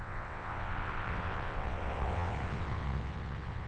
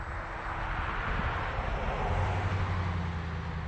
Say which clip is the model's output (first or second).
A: first